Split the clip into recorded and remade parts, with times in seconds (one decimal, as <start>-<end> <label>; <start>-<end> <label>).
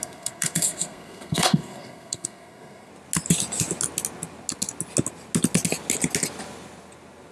0.0-2.9 remade; 2.9-7.3 recorded